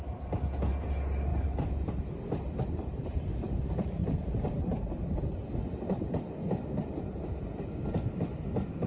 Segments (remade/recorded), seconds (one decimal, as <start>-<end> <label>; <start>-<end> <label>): 0.0-1.3 recorded; 1.3-1.9 remade; 1.9-4.0 recorded; 4.0-6.1 remade; 6.1-8.9 recorded